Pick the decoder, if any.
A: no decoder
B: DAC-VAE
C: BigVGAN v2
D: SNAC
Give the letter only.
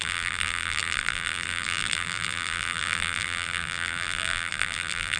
C